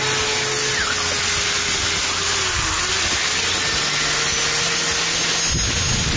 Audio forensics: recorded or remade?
recorded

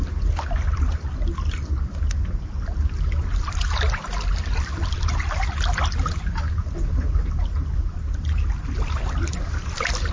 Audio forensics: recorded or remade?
recorded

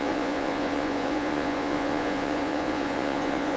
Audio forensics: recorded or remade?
remade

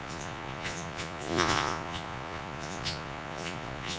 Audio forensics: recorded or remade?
remade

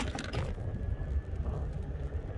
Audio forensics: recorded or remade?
recorded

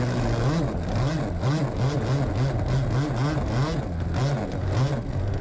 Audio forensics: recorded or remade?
recorded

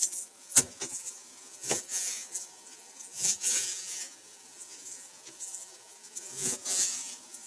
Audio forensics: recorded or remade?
remade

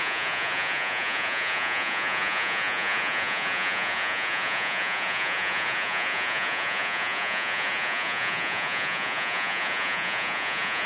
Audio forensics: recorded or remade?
remade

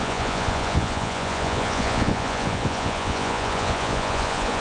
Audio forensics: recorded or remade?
remade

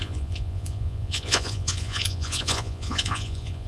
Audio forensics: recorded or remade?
remade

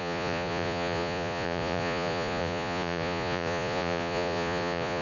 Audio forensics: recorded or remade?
remade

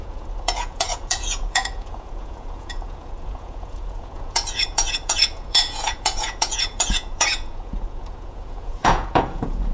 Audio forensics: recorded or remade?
remade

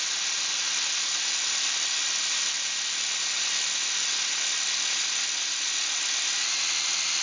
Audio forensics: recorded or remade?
recorded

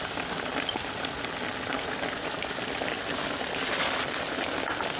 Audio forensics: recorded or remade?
recorded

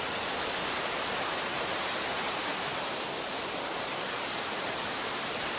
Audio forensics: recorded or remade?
recorded